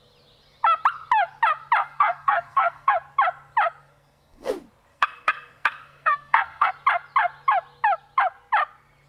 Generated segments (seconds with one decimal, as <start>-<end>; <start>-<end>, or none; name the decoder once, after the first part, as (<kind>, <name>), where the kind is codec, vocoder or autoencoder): 1.8-2.9 (codec, SNAC); 3.8-4.5; 4.9-6.7